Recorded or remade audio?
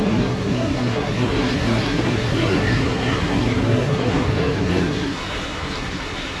remade